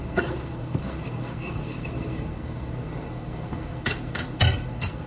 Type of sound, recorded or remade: remade